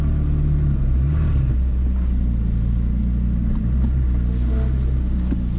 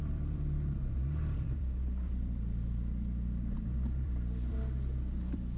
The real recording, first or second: first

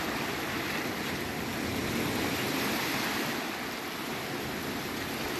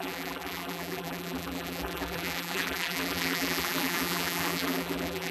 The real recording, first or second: first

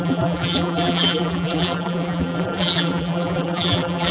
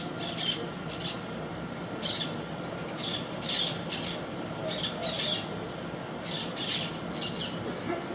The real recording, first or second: second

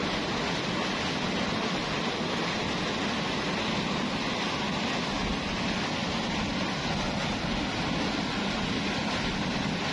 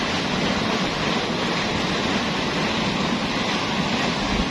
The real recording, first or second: first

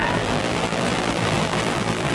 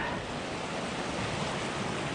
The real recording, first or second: second